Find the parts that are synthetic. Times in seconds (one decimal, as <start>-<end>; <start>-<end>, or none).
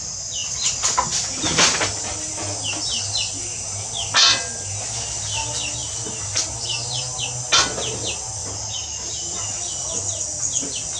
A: none